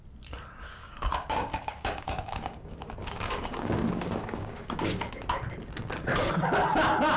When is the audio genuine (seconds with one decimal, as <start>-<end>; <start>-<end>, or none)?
0.0-0.8; 5.1-7.2